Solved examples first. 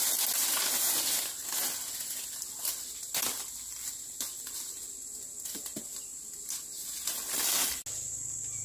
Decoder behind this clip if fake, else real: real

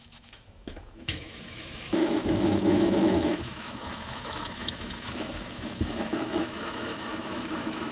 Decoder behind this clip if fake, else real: fake, autoencoder, DAC-VAE